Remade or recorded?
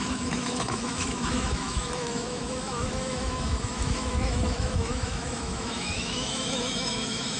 remade